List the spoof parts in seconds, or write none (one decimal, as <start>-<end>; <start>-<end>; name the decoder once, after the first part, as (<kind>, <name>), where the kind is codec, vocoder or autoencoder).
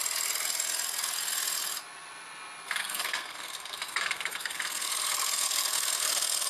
2.8-6.5 (codec, SNAC)